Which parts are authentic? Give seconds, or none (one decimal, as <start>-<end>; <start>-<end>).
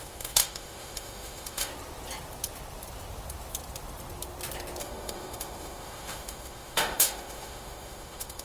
1.7-4.8